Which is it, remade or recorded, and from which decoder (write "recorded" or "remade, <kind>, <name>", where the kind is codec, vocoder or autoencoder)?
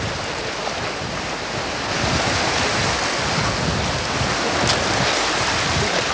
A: recorded